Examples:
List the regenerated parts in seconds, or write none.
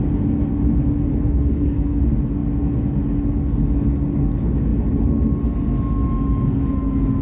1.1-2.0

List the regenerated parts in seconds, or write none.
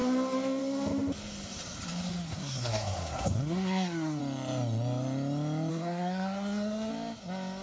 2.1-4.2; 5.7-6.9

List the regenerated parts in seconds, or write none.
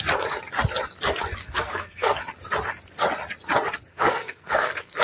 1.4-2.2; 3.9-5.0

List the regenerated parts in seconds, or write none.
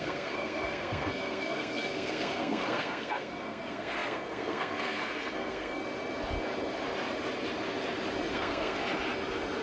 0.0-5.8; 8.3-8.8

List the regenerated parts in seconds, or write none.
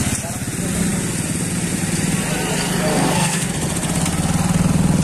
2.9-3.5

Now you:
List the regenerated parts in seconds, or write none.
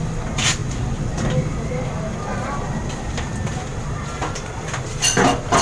none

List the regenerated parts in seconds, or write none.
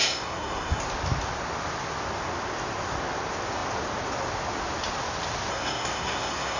0.0-0.8; 5.5-6.6